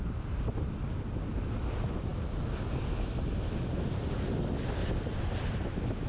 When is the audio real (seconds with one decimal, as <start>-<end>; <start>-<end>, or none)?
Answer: 0.0-6.1